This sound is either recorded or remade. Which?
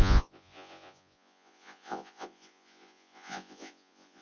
remade